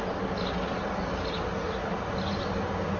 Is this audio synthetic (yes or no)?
no